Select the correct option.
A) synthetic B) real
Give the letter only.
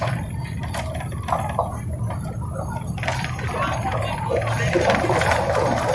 B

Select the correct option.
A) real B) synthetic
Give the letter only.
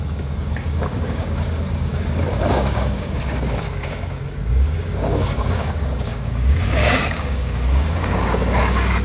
B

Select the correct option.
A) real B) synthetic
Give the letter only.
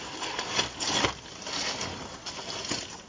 A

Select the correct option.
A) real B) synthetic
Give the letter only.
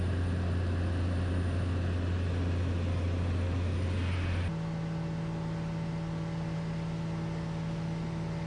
A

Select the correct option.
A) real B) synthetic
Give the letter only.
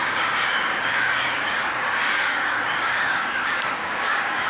B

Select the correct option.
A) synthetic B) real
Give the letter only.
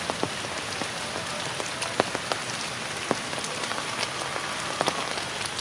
B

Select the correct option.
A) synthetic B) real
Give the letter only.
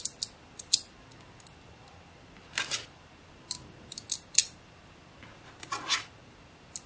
B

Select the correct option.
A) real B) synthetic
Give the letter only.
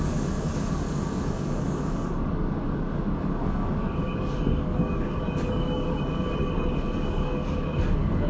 B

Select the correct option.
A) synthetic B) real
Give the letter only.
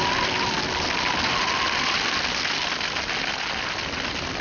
B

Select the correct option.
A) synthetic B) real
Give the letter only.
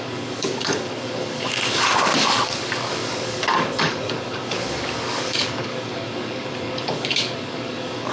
A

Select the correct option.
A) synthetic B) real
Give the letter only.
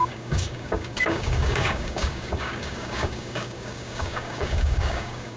A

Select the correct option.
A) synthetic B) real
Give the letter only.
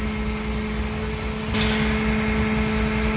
B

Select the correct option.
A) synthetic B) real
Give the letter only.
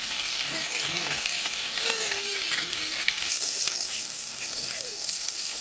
A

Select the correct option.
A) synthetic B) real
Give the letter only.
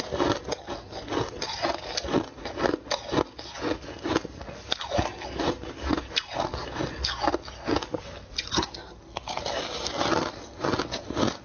B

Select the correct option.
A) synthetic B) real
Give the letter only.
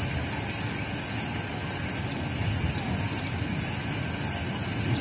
B